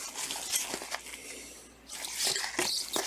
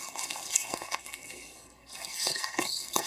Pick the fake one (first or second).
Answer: second